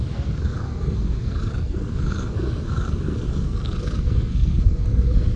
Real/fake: fake